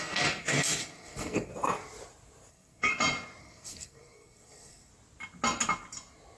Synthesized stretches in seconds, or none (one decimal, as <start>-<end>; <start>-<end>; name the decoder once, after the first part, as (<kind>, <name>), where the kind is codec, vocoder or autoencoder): 0.0-1.5 (codec, SNAC); 2.5-2.9; 3.4-4.9